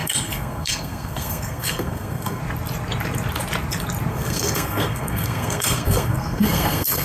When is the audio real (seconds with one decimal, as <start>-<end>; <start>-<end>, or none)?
2.4-4.1